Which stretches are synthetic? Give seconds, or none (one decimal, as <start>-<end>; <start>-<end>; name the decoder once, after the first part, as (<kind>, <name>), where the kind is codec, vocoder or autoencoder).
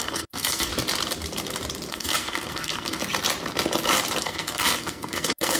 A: 0.0-0.7 (codec, SNAC); 1.9-3.0; 4.2-5.6